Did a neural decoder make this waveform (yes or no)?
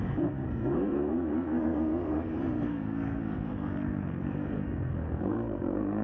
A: yes